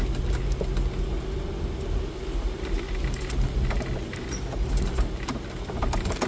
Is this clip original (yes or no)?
yes